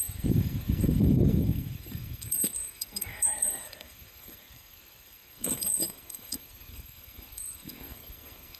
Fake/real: fake